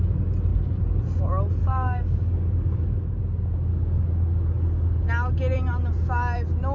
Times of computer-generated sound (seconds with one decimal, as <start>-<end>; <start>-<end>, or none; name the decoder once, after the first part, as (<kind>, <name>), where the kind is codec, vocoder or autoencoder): 1.6-3.2 (codec, DAC); 3.7-5.1